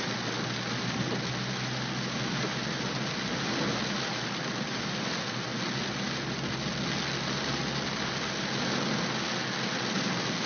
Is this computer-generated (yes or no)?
no